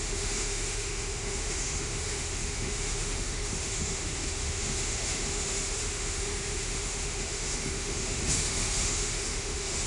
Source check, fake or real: fake